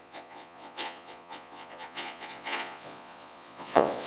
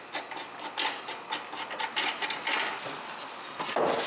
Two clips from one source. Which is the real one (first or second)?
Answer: second